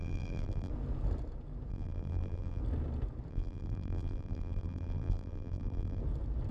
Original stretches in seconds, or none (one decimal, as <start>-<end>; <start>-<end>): 0.7-1.7; 2.6-3.3; 6.0-6.5